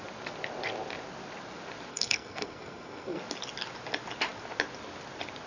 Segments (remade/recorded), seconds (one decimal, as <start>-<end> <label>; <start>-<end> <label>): 0.0-1.9 recorded; 1.9-3.2 remade; 3.2-5.5 recorded

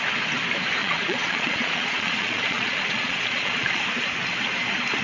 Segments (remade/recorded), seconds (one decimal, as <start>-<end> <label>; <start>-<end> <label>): 0.0-0.8 recorded; 0.8-3.8 remade; 3.8-5.0 recorded

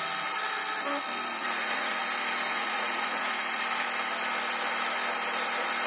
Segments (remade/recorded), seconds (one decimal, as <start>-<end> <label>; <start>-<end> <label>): 0.0-1.3 recorded; 1.3-2.0 remade; 2.0-2.5 recorded; 2.5-3.6 remade; 3.6-5.9 recorded

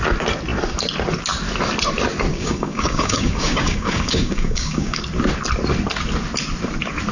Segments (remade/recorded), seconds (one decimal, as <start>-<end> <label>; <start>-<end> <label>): 0.0-2.3 recorded; 2.3-5.0 remade; 5.0-7.1 recorded

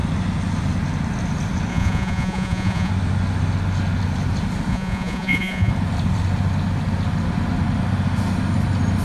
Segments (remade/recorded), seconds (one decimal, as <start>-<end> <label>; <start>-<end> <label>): 0.0-1.7 recorded; 1.7-2.9 remade; 2.9-4.7 recorded; 4.7-5.7 remade; 5.7-9.0 recorded

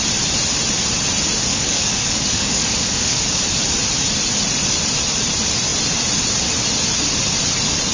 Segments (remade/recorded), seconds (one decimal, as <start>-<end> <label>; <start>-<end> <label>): 0.0-1.5 recorded; 1.5-3.4 remade; 3.4-7.9 recorded